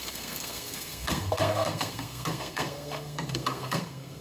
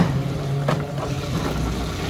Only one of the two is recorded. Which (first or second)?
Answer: second